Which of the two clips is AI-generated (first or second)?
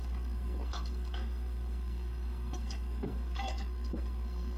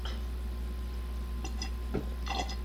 first